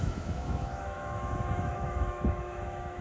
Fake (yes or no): yes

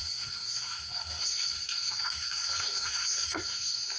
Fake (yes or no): yes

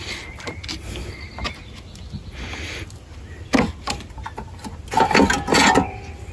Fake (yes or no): no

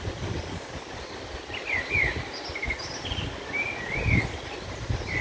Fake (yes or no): no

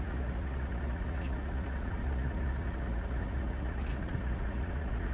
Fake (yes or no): yes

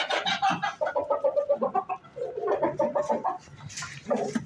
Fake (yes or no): no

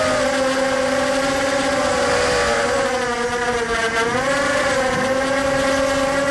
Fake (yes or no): no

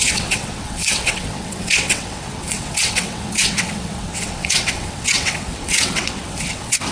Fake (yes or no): yes